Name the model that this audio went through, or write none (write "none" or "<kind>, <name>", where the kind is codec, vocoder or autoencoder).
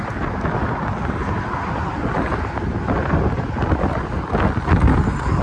none